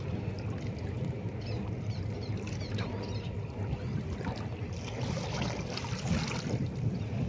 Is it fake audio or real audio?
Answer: real